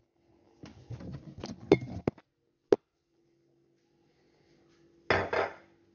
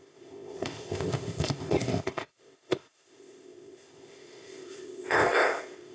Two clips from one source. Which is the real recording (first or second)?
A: first